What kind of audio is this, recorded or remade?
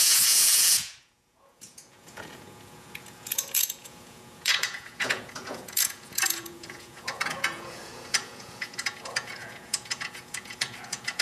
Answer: remade